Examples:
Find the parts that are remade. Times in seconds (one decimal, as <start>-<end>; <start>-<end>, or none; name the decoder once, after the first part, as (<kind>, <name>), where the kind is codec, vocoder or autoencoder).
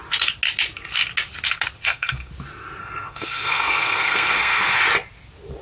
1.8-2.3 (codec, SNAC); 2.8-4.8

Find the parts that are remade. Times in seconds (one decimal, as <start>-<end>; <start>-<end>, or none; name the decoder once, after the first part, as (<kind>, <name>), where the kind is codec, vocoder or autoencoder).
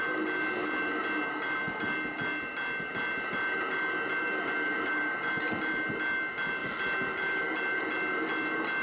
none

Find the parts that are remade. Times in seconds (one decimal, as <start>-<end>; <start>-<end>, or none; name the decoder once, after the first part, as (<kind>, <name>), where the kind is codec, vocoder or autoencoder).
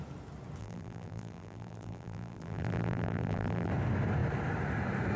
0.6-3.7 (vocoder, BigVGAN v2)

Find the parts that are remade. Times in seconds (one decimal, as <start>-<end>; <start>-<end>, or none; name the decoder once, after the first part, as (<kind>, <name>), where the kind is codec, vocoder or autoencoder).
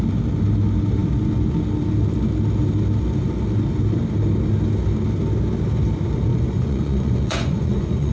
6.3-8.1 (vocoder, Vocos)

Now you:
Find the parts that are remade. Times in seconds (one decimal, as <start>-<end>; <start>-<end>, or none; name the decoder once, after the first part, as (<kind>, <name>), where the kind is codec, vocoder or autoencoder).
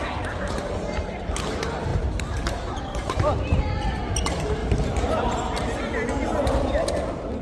1.9-3.6 (vocoder, BigVGAN v2); 4.6-5.3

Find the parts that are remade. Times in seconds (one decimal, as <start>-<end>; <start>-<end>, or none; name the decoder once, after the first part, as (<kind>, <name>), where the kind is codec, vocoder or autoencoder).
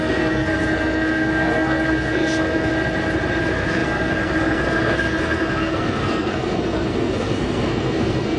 0.0-2.7 (codec, SNAC); 3.4-8.4